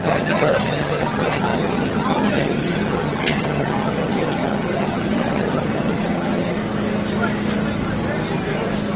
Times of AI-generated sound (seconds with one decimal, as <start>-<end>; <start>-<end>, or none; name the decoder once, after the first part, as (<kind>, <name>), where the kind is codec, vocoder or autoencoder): 0.0-6.6 (vocoder, HiFi-GAN)